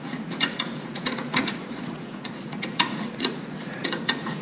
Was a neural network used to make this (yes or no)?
yes